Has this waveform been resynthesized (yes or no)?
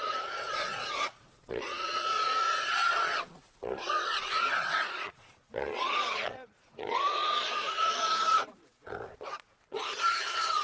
yes